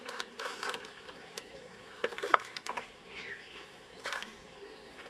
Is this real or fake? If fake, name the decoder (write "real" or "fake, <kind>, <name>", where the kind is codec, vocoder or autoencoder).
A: fake, codec, SNAC